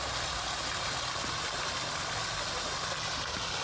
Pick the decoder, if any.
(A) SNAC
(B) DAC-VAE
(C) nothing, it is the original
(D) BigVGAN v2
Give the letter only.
C